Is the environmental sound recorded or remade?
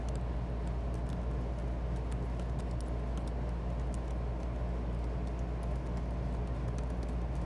recorded